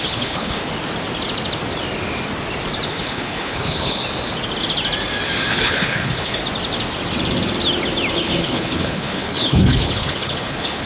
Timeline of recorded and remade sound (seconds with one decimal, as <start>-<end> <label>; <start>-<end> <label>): 0.0-0.6 remade; 0.6-2.9 recorded; 2.9-4.0 remade; 4.0-5.5 recorded; 5.5-6.4 remade; 6.4-8.1 recorded; 8.1-10.9 remade